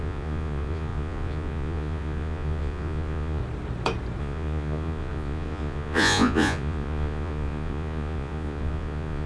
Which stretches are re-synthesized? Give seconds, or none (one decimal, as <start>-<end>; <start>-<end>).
0.0-3.4; 4.2-9.3